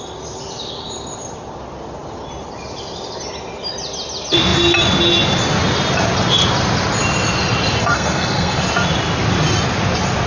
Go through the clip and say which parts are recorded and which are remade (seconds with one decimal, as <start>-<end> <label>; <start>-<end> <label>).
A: 0.0-7.8 recorded; 7.8-8.6 remade; 8.6-10.3 recorded